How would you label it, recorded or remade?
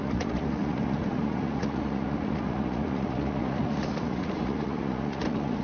remade